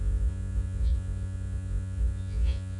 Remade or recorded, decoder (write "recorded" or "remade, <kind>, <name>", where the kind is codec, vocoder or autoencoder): remade, vocoder, Vocos